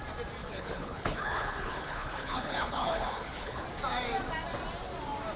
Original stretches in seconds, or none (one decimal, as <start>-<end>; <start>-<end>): 0.0-0.4; 3.6-5.4